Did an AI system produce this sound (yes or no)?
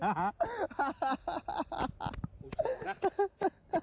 no